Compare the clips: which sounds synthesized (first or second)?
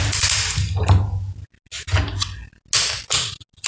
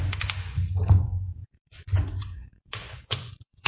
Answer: second